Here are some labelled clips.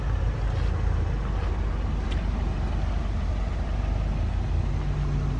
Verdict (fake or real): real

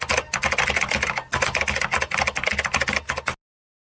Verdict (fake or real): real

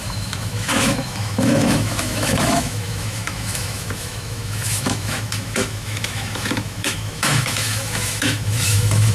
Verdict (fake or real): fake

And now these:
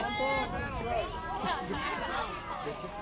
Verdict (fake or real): real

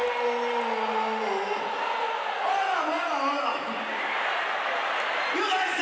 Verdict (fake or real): real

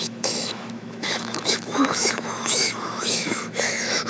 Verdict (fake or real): fake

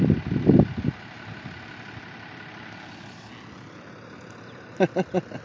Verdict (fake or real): real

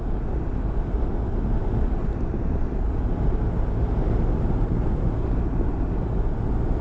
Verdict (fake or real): real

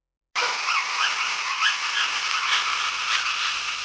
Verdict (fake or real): real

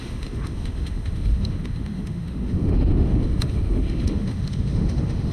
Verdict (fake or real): fake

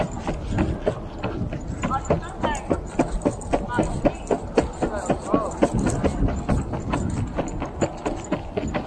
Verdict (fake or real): real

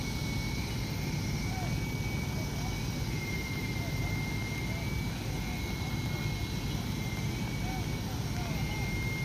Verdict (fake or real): real